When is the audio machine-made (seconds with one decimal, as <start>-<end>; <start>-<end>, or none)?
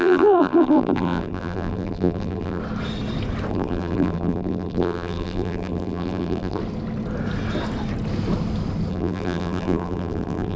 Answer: 0.0-2.6; 3.5-6.6; 8.9-10.6